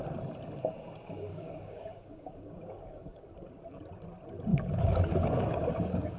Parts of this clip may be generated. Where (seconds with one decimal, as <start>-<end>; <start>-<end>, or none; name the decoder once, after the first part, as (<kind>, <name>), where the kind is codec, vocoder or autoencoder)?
1.3-3.2 (codec, DAC); 4.5-6.2